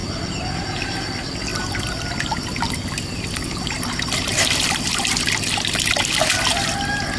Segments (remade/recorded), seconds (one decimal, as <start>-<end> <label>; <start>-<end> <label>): 0.0-7.2 recorded